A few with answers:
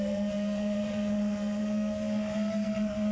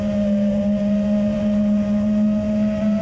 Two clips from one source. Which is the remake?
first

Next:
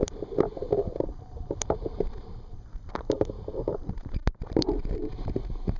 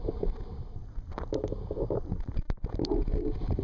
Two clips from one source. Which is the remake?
first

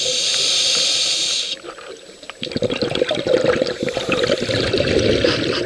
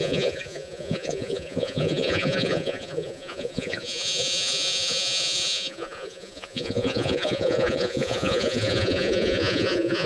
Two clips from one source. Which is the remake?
second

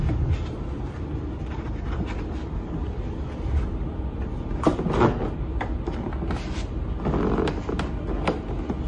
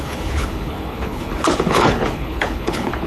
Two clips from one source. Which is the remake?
second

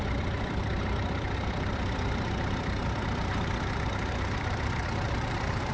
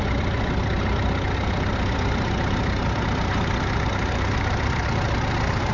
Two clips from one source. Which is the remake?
first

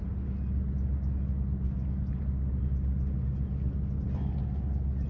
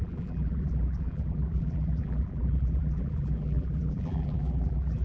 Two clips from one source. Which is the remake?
second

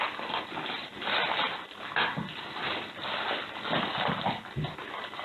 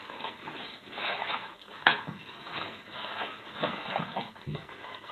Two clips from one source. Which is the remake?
second